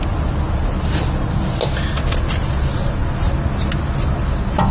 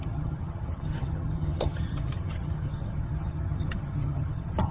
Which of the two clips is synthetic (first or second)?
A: second